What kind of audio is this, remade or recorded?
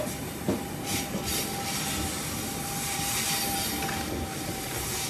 recorded